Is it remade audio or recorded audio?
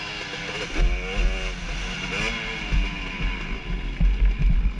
recorded